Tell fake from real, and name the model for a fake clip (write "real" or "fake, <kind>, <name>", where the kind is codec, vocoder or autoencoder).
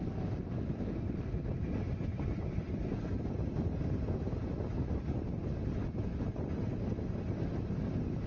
real